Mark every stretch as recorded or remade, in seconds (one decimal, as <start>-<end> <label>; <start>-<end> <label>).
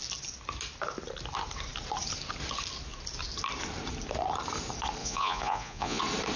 0.0-5.0 recorded; 5.0-6.0 remade; 6.0-6.4 recorded